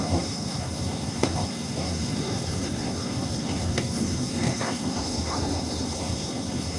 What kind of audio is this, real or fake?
fake